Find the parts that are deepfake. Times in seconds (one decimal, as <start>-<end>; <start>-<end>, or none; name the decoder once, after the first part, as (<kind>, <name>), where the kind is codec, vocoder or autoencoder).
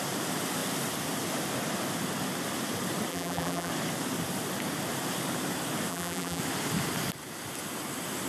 3.1-3.7 (vocoder, BigVGAN v2); 5.9-6.4